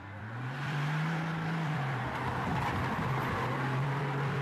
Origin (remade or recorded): remade